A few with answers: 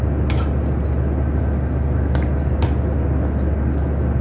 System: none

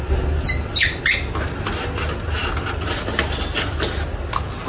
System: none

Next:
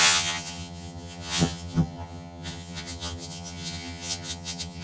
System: vocoder, HiFi-GAN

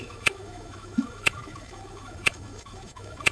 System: autoencoder, DAC-VAE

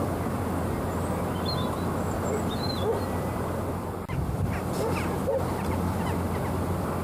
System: none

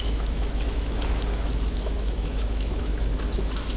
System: autoencoder, DAC-VAE